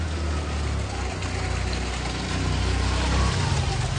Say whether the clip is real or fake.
real